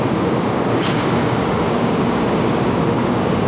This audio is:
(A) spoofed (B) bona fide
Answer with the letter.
A